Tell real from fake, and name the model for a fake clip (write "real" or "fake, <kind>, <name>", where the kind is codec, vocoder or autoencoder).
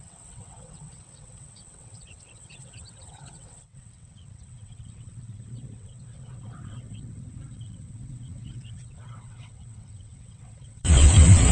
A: fake, vocoder, WaveNeXt